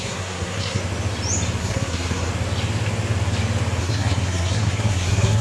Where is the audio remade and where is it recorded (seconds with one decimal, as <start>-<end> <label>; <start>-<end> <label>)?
0.0-0.8 remade; 0.8-1.6 recorded; 1.6-2.3 remade; 2.3-3.8 recorded; 3.8-5.4 remade